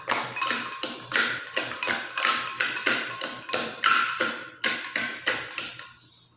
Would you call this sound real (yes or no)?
no